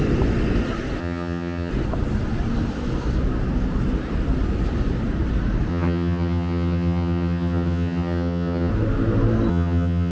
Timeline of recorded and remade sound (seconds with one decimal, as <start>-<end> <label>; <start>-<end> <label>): 0.0-1.0 recorded; 1.0-1.7 remade; 1.7-5.7 recorded; 5.7-8.7 remade; 8.7-9.5 recorded; 9.5-10.1 remade